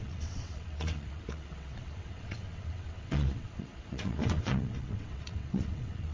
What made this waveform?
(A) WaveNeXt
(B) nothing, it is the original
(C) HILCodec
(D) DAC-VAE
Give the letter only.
A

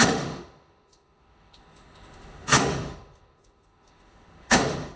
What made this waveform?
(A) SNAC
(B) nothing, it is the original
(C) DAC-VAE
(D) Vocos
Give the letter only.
C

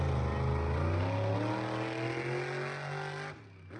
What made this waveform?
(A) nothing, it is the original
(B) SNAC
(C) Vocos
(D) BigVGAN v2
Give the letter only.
A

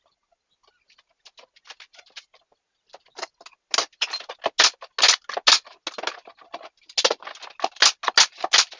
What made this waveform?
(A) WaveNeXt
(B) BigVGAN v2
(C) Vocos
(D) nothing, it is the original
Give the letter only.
D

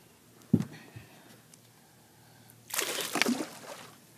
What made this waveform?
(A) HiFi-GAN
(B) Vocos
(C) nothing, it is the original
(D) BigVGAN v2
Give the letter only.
C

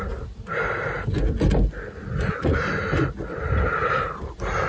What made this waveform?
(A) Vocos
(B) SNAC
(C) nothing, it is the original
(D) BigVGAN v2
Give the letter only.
C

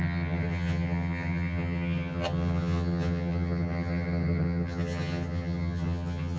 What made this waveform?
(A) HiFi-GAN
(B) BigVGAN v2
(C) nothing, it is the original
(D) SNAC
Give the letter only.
A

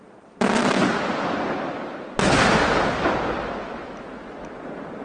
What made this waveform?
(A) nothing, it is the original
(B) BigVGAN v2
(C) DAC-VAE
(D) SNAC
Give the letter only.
A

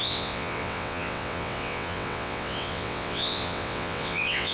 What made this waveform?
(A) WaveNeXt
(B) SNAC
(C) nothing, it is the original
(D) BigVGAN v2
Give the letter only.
A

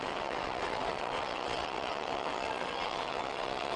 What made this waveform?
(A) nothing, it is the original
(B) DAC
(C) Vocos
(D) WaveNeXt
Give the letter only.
D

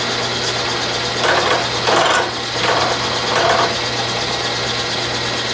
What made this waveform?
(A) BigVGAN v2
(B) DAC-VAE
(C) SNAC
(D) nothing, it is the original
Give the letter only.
D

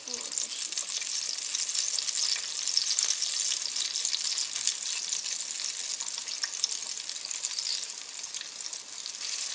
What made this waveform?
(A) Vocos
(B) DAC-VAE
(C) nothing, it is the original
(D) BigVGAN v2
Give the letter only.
C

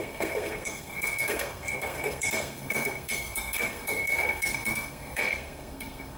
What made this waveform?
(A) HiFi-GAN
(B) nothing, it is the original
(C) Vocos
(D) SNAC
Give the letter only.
D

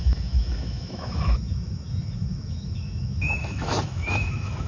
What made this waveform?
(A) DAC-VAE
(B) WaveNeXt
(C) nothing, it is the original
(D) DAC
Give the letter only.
A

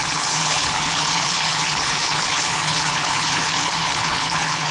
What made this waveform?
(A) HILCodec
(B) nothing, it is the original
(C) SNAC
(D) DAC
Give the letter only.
A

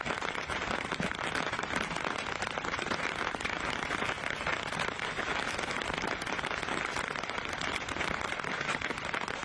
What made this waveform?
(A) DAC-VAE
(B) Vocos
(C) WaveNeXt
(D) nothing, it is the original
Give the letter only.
D